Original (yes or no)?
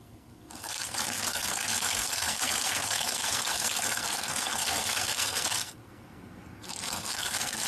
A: no